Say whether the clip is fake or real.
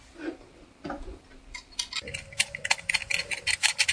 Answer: real